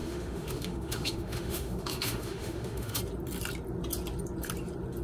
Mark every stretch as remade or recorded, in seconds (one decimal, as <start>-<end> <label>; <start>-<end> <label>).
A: 0.0-3.0 remade; 3.0-5.0 recorded